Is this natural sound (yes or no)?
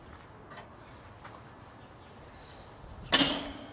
yes